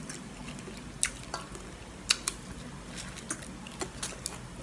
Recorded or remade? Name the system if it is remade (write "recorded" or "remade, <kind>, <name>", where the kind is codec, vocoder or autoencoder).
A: recorded